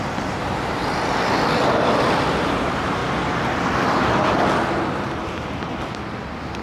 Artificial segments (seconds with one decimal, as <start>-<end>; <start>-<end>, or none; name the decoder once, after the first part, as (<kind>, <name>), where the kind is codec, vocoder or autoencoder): 0.0-0.8 (vocoder, BigVGAN v2); 2.6-3.0